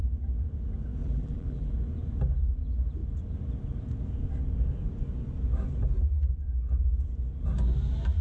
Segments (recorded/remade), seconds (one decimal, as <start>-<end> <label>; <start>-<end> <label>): 0.0-1.0 recorded; 1.0-1.7 remade; 1.7-8.2 recorded